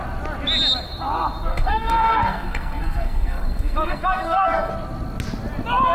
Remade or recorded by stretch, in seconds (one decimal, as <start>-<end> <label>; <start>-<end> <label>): 0.0-1.5 recorded; 1.5-4.7 remade; 4.7-5.9 recorded